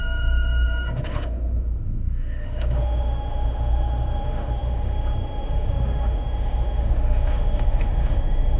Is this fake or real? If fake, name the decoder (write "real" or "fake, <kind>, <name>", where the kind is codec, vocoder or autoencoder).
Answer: fake, autoencoder, DAC-VAE